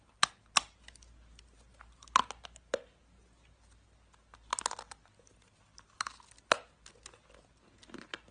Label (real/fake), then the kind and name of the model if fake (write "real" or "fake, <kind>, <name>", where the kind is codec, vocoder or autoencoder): real